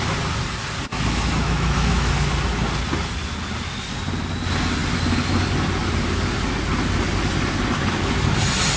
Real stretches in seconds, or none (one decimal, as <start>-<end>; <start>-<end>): 0.0-0.9; 2.1-8.8